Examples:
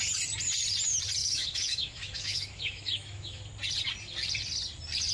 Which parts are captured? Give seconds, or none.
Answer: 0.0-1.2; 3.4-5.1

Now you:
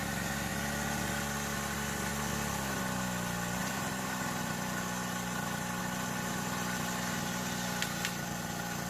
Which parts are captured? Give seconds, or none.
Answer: 0.0-3.6; 5.8-8.9

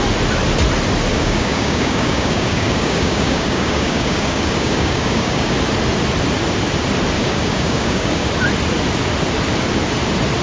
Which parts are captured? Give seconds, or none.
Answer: 0.0-1.1; 5.5-7.2; 8.3-10.4

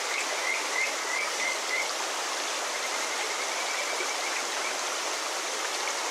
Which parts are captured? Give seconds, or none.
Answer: 0.0-1.0; 1.6-6.1

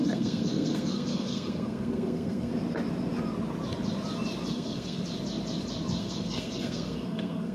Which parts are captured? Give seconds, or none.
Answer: 2.5-4.5; 5.0-6.0

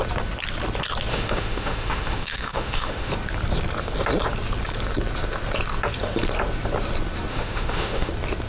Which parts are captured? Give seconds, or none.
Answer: 0.0-1.1; 3.1-7.3; 8.1-8.5